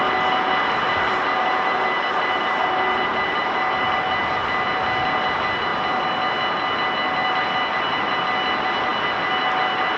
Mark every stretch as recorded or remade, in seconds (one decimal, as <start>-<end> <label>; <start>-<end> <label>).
0.0-1.4 recorded; 1.4-4.3 remade; 4.3-10.0 recorded